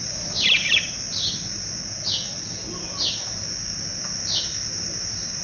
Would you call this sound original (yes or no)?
yes